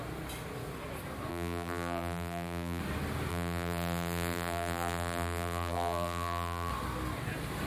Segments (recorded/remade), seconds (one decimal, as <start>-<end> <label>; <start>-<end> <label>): 0.0-1.3 recorded; 1.3-2.8 remade; 2.8-3.3 recorded; 3.3-6.7 remade; 6.7-7.7 recorded